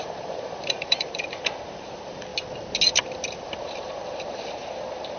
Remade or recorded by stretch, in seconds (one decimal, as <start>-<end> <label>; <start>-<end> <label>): 0.0-2.3 remade; 2.3-3.4 recorded; 3.4-5.2 remade